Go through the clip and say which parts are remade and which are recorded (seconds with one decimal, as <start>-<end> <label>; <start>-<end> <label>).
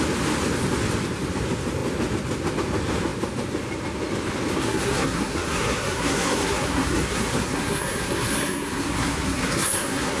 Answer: 0.0-4.6 recorded; 4.6-10.2 remade